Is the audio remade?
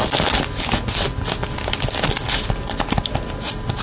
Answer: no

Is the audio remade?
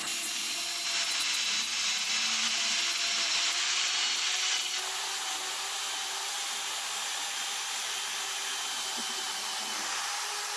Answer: no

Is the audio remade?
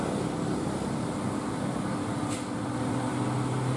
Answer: no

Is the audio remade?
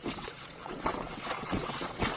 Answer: yes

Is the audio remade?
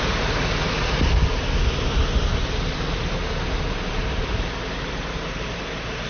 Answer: no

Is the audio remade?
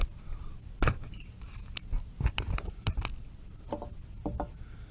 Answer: no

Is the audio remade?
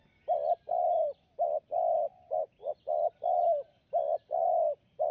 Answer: no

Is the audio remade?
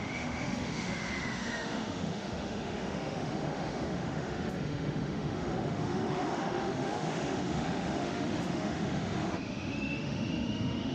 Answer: yes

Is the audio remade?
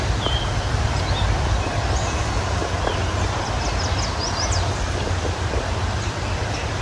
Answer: no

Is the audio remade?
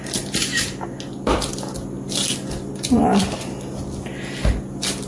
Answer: no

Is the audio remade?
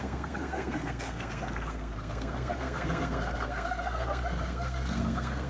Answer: yes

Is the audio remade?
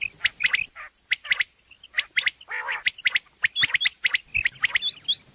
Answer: no